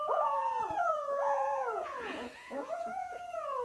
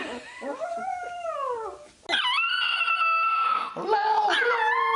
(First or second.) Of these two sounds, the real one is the second